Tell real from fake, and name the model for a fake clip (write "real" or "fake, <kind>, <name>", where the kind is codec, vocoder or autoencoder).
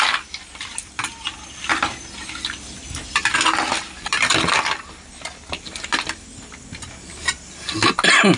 real